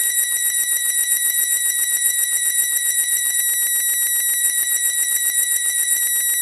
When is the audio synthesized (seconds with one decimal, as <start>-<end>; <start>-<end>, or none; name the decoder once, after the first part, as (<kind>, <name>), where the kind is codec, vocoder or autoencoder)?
0.0-3.4 (autoencoder, DAC-VAE); 4.4-6.0